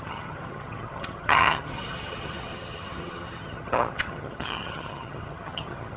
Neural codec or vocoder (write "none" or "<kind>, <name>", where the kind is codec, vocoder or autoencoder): vocoder, HiFi-GAN